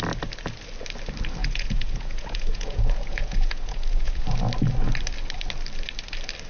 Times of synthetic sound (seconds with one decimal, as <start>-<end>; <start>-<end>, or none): 1.4-4.2